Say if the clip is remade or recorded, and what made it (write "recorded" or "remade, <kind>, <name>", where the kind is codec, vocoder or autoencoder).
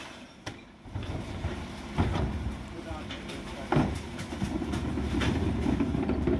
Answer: remade, vocoder, BigVGAN v2